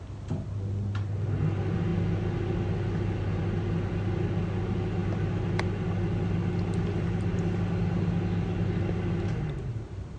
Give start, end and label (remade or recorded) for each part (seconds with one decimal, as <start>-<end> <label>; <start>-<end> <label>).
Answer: 0.0-10.2 recorded